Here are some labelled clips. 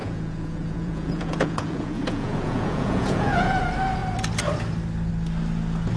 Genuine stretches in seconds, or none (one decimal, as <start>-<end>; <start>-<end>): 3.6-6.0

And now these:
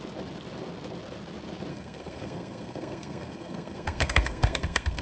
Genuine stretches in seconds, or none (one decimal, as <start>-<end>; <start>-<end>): 0.0-1.7

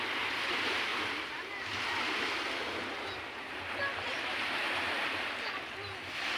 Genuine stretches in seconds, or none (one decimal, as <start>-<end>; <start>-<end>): 0.0-6.4

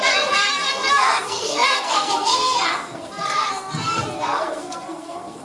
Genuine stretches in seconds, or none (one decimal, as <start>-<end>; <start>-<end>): none

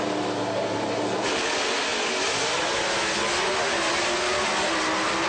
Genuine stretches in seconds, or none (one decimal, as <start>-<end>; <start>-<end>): 0.0-5.3

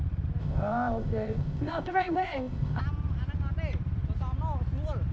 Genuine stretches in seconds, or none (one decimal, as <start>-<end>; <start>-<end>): 0.0-0.4; 2.8-5.1

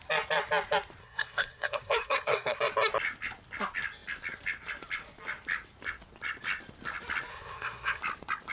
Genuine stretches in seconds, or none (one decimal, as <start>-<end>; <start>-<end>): 0.0-1.0; 2.6-7.3; 8.0-8.5

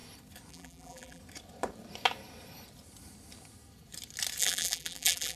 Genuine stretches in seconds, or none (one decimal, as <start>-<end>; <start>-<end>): 0.0-0.5; 1.2-4.4